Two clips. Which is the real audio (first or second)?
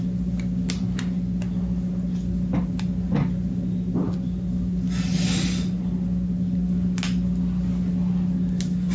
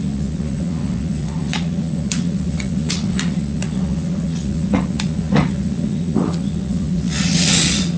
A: first